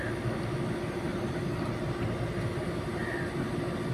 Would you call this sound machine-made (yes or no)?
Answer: no